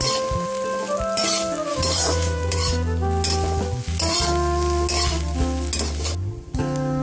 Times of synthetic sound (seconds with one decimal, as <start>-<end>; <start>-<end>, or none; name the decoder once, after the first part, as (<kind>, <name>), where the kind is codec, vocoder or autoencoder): 1.7-2.6 (vocoder, BigVGAN v2)